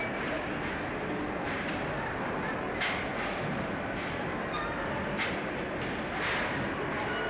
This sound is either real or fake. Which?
real